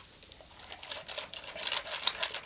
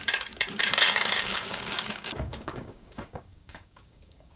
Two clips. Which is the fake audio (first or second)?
second